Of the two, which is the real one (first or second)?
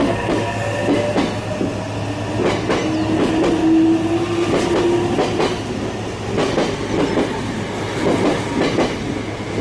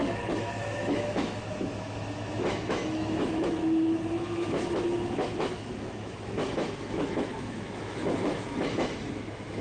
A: first